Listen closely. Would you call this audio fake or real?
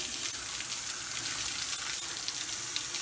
real